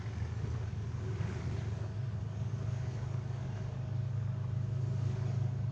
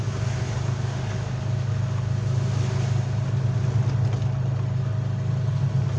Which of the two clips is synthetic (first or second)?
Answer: first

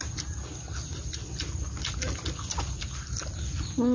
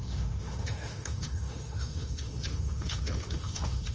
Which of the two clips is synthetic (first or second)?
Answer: second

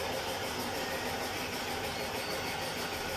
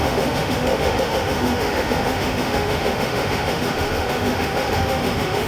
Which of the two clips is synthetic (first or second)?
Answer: second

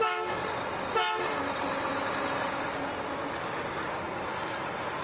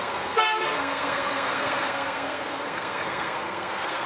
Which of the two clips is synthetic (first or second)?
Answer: second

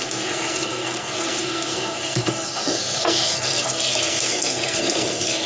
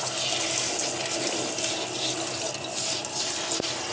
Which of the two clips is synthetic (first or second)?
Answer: first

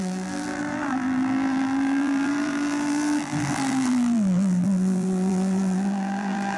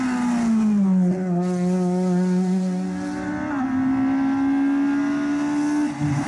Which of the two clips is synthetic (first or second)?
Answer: first